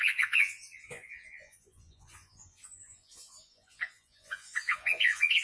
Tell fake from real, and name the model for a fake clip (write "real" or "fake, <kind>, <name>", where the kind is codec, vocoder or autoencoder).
fake, vocoder, Vocos